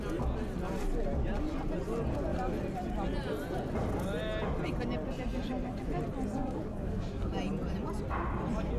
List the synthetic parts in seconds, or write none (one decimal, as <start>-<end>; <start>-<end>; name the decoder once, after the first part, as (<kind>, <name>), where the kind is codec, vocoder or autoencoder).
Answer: 6.4-7.3 (codec, DAC)